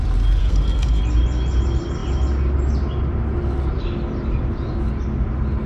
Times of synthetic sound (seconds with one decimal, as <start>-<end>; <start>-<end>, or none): 0.4-1.0